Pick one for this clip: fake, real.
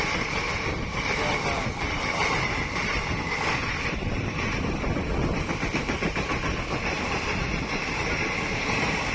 real